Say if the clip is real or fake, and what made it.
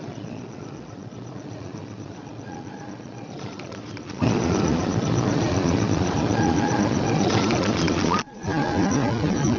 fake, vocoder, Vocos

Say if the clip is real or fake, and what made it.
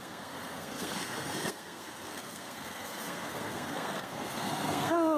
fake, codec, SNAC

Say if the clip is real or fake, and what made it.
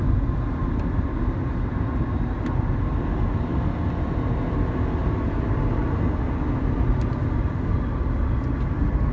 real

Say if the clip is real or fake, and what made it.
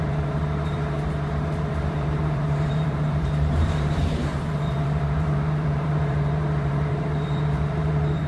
fake, vocoder, BigVGAN v2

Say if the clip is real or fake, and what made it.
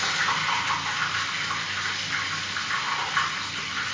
real